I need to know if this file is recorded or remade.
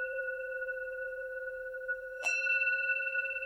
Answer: remade